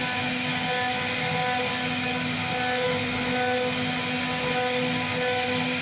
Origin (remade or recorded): recorded